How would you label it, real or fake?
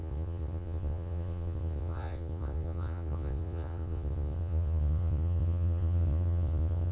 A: fake